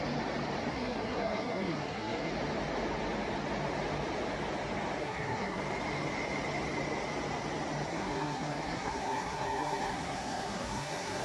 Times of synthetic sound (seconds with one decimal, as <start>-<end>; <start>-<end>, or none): 0.7-2.3; 5.0-5.6; 7.9-11.2